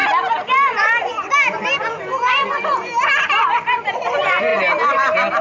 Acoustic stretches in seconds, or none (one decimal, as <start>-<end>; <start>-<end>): 0.0-5.4

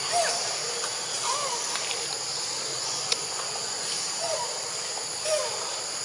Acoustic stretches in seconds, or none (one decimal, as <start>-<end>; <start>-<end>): 0.0-2.7; 3.9-6.0

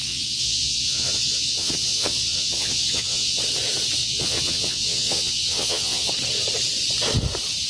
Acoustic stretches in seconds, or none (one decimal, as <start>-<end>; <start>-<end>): 3.4-4.0; 6.1-7.7

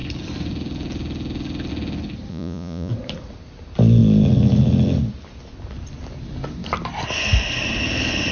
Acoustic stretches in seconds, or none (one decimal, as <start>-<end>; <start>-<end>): 0.0-2.3; 2.9-8.3

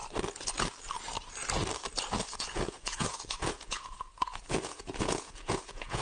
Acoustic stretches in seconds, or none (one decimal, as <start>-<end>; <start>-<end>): 0.0-2.4

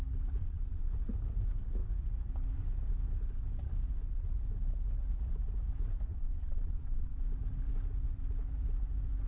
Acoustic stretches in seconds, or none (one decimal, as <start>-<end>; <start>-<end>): 0.0-0.4; 0.9-6.1; 7.2-9.3

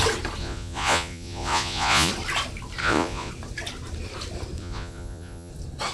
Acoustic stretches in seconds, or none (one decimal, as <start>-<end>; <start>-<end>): 0.0-0.4; 2.1-2.8; 3.3-4.6; 5.5-5.9